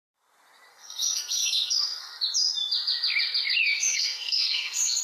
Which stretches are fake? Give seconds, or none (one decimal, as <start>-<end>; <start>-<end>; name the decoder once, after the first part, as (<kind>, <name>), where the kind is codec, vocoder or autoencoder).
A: 0.7-2.1 (codec, SNAC); 3.6-5.0